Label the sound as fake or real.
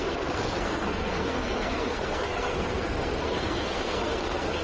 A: fake